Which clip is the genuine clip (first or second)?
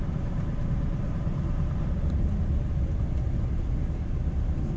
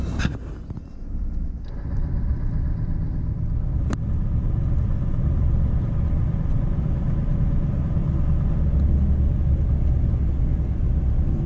second